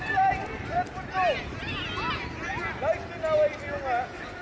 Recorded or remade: recorded